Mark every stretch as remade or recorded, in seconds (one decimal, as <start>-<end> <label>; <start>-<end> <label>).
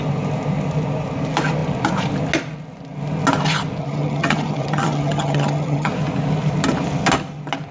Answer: 0.0-3.8 recorded; 3.8-5.9 remade; 5.9-7.7 recorded